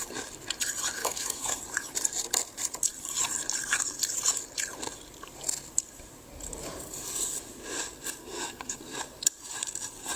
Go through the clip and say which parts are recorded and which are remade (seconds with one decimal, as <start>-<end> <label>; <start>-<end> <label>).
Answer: 0.0-1.0 recorded; 1.0-1.6 remade; 1.6-8.2 recorded; 8.2-8.8 remade; 8.8-10.2 recorded